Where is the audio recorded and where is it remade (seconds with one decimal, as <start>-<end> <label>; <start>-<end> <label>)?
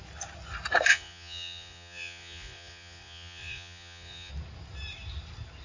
0.0-0.9 recorded; 0.9-4.3 remade; 4.3-5.6 recorded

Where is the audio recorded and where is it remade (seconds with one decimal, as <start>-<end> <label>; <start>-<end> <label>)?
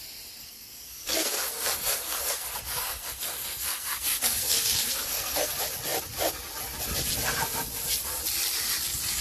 0.0-0.4 recorded; 0.4-5.5 remade; 5.5-9.2 recorded